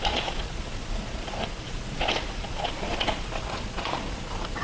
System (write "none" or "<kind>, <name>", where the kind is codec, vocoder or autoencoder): vocoder, Vocos